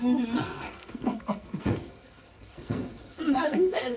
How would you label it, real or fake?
fake